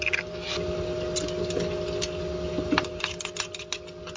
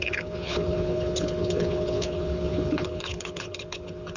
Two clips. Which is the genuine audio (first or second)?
first